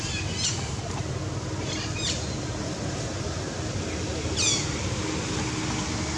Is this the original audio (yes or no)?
yes